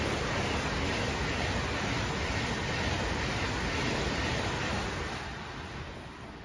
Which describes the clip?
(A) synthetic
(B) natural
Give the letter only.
B